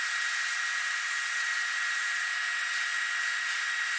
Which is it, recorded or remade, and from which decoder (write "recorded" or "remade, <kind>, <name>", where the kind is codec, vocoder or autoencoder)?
recorded